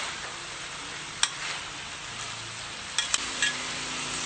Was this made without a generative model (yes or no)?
yes